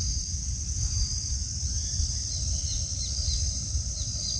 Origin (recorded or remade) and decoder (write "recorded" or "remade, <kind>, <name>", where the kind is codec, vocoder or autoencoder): recorded